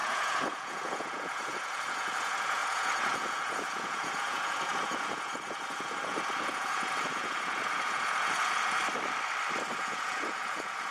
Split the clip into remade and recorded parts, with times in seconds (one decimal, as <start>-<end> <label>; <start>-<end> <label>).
0.0-8.8 remade; 8.8-9.7 recorded; 9.7-10.9 remade